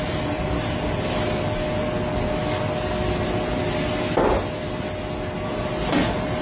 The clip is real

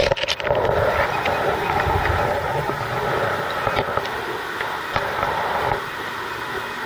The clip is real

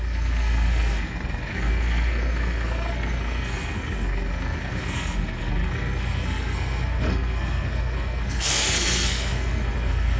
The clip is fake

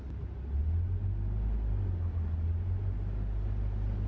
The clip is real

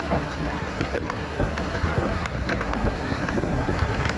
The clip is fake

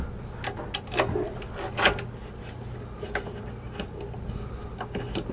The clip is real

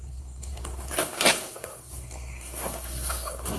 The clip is fake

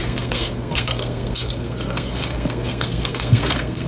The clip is fake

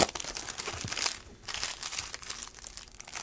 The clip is real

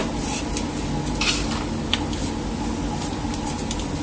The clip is real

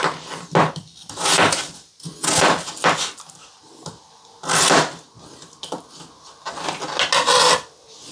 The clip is real